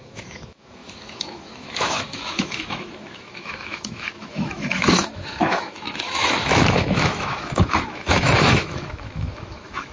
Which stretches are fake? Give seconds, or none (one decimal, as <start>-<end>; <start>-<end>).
0.0-9.9

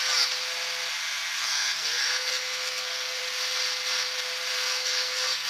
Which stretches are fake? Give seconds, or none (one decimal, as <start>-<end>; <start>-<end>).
1.4-3.2; 4.5-5.5